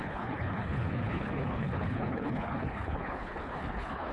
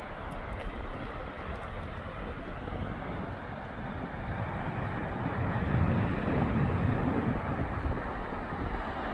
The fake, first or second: first